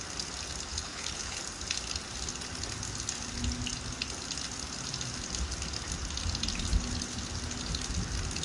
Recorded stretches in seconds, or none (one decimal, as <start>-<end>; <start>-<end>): 0.0-0.7; 1.4-8.4